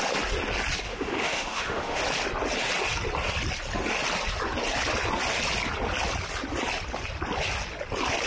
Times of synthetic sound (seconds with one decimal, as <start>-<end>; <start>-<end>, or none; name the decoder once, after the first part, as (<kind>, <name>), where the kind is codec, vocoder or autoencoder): 0.9-2.0 (autoencoder, DAC-VAE)